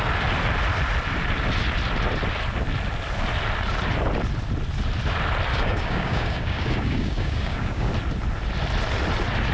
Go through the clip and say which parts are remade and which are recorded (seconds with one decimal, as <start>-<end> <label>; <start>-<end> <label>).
0.0-5.5 recorded; 5.5-7.9 remade; 7.9-9.5 recorded